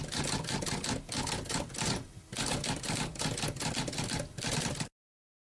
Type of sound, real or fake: real